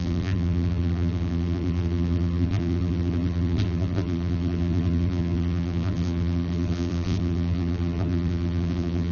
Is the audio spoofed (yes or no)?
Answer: yes